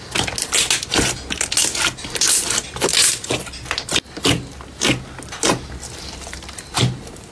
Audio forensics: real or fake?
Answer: real